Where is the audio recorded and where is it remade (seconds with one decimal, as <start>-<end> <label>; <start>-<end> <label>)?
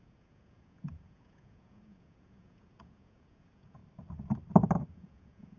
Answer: 0.0-3.8 remade; 3.8-4.9 recorded; 4.9-5.6 remade